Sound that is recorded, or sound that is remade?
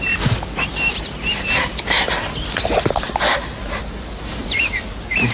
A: recorded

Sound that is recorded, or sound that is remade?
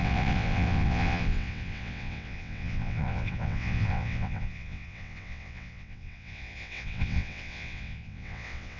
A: remade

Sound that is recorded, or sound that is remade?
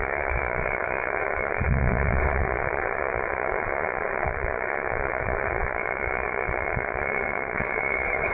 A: remade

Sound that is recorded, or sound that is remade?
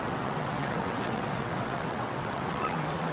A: remade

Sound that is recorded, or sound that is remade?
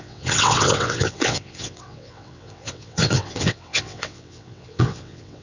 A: remade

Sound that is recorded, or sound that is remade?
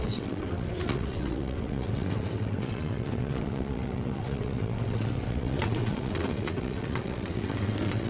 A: remade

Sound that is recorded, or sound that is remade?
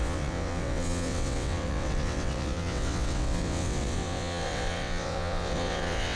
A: remade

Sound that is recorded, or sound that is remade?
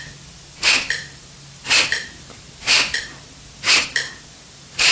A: recorded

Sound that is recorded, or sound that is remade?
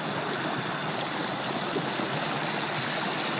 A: recorded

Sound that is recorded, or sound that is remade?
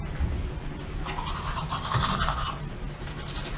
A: recorded